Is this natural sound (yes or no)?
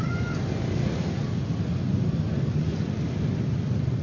yes